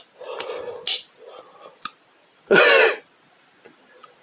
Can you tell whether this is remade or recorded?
recorded